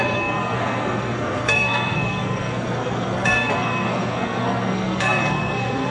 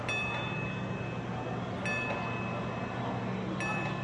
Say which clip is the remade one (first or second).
first